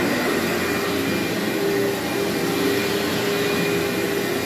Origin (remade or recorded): recorded